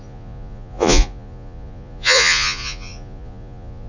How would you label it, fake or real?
fake